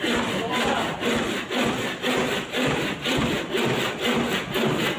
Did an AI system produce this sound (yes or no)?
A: no